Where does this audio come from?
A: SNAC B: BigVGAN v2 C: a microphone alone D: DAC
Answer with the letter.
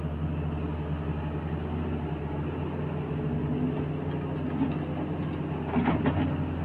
C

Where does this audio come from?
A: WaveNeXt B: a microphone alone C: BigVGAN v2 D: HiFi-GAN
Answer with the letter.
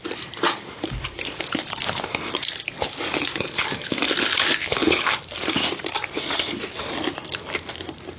B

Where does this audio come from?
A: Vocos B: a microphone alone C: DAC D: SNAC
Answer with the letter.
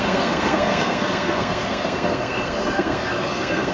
D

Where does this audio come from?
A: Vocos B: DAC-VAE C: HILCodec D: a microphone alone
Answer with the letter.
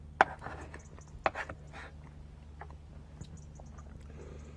D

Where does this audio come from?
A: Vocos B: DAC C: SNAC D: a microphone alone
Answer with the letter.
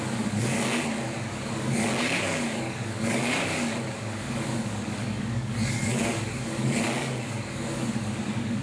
B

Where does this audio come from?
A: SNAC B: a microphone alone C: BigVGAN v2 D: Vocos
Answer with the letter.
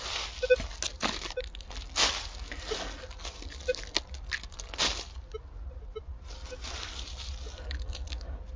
B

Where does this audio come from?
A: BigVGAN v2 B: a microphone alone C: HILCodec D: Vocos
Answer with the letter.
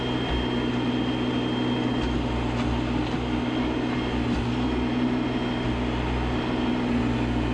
B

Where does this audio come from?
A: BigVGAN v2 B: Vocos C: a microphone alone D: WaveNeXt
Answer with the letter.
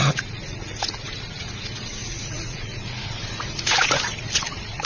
B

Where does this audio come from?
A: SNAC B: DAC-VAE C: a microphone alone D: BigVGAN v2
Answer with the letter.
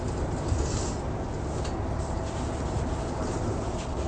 C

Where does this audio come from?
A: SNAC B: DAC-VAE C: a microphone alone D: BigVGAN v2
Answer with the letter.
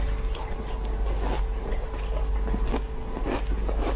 C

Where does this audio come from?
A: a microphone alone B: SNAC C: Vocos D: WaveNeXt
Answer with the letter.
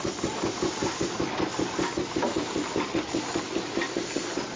A